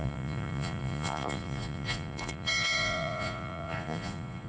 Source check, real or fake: fake